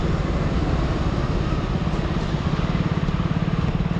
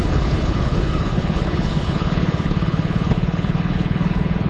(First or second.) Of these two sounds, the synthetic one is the second